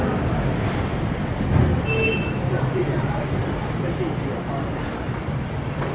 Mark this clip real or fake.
fake